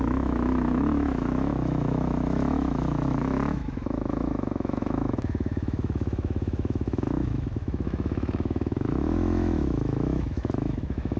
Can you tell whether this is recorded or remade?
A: remade